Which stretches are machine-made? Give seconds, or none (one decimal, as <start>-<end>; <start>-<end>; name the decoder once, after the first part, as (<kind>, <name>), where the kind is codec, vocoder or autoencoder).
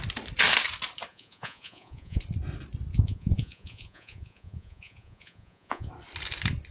1.1-2.2 (vocoder, Vocos); 2.9-5.9